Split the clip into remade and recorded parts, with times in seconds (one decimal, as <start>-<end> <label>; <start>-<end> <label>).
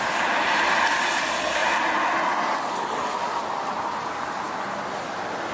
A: 0.0-5.5 recorded